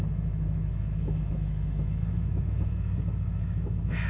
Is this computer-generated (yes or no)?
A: yes